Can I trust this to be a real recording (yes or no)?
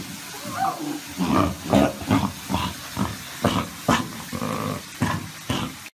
yes